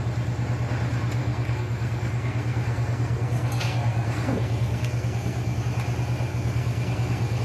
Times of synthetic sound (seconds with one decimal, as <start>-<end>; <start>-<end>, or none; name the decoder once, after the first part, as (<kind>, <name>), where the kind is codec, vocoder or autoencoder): 1.2-5.6 (codec, SNAC); 6.3-7.4